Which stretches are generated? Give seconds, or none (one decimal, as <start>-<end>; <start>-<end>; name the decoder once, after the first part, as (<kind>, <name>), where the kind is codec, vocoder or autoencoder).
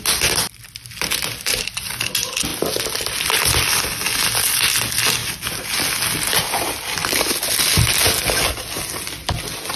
none